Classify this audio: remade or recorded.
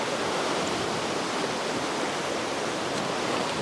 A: recorded